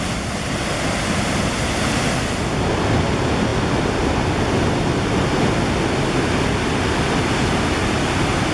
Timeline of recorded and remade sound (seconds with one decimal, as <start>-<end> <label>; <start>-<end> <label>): 0.0-8.5 recorded